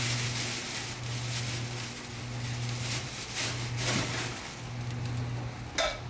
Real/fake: real